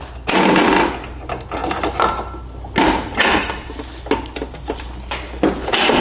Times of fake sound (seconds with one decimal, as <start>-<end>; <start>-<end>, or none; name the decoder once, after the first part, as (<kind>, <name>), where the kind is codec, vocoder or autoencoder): none